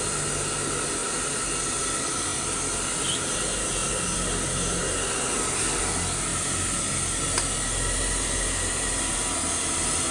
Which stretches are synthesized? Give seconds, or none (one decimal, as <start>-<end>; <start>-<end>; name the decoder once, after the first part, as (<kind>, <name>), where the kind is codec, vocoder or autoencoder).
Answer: none